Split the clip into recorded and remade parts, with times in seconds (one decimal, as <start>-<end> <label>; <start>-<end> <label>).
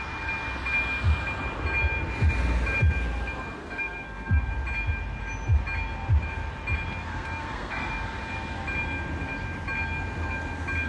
0.0-3.6 recorded; 3.6-4.5 remade; 4.5-7.0 recorded; 7.0-7.9 remade; 7.9-10.9 recorded